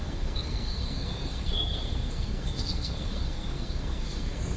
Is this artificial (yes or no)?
yes